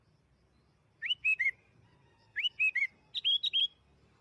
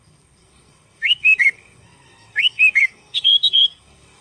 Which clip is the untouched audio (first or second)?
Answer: first